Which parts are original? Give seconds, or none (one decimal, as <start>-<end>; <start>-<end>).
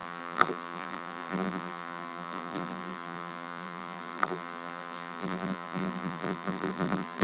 none